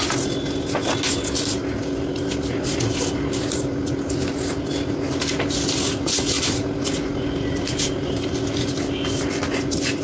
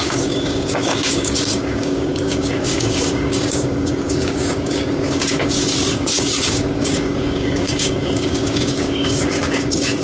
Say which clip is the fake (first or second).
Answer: second